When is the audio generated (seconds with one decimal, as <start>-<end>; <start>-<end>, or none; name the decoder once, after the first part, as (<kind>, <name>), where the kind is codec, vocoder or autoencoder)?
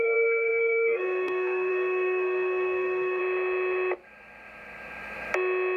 0.0-3.2 (codec, SNAC)